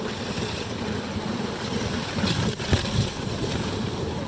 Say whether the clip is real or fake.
real